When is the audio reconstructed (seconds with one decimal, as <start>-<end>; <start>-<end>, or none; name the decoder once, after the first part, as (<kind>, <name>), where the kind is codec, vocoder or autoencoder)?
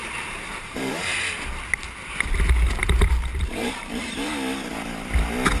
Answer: 0.0-1.2 (vocoder, BigVGAN v2); 3.3-4.3